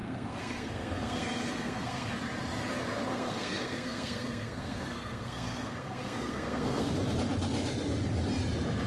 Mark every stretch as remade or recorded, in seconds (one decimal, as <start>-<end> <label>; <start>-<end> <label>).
0.0-2.1 remade; 2.1-3.1 recorded; 3.1-6.9 remade; 6.9-8.9 recorded